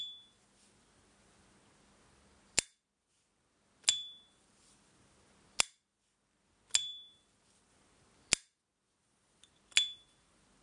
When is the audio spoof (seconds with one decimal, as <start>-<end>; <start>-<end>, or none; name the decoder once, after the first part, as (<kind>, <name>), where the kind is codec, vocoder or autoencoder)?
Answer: none